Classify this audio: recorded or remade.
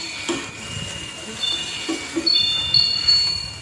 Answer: recorded